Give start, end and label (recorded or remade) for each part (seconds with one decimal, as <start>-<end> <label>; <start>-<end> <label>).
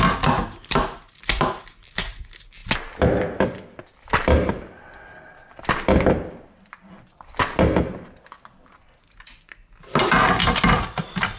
0.0-11.4 recorded